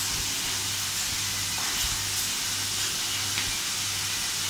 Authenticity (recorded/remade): recorded